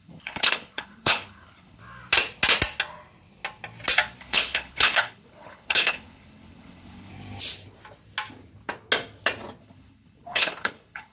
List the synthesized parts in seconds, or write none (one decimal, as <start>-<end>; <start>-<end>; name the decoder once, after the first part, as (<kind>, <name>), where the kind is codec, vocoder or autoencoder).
0.0-1.8 (codec, HILCodec); 4.2-7.1; 9.6-11.1